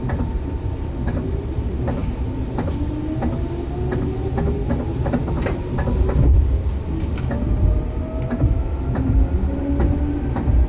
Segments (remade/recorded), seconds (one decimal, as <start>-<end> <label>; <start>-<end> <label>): 0.0-2.0 recorded; 2.0-2.5 remade; 2.5-10.7 recorded